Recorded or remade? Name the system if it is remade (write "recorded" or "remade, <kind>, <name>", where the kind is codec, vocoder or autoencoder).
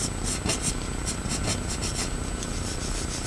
recorded